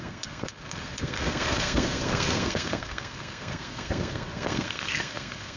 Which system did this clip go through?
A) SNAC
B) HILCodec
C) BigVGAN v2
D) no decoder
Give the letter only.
A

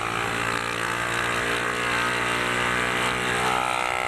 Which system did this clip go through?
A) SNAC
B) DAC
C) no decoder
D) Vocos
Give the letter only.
C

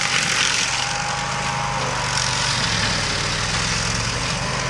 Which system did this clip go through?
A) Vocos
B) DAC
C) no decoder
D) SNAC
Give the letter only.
C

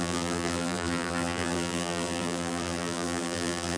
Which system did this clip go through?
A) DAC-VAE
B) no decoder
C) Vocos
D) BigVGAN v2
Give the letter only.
D